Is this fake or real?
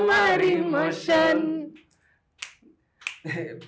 real